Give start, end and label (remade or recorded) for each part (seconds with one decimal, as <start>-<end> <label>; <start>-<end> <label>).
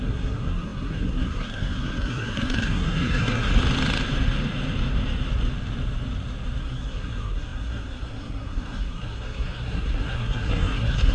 0.0-3.5 remade; 3.5-6.6 recorded; 6.6-11.1 remade